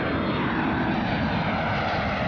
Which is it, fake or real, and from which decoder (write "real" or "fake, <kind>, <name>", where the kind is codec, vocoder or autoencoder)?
real